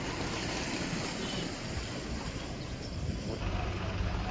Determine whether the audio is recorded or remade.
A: remade